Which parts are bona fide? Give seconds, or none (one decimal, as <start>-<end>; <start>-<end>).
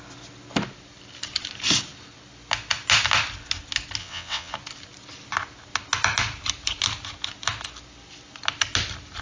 0.0-4.0; 4.5-9.2